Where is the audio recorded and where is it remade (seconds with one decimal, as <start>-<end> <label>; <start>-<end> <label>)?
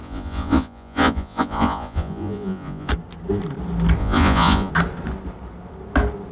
0.0-2.9 remade; 2.9-4.0 recorded; 4.0-4.7 remade; 4.7-6.3 recorded